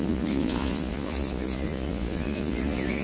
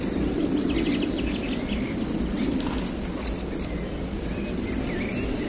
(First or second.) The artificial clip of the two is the first